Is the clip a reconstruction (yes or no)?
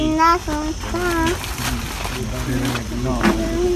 no